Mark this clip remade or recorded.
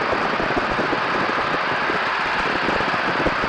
recorded